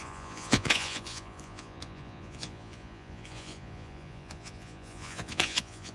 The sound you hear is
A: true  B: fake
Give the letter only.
B